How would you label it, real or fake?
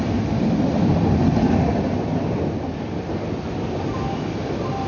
real